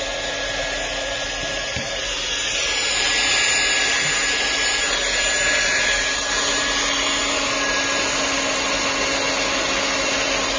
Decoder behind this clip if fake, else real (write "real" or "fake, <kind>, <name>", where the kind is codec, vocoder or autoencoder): real